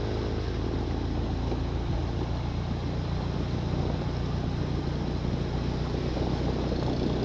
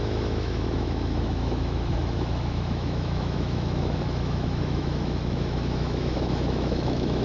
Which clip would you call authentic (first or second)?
first